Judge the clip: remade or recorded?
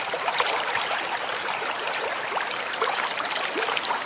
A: remade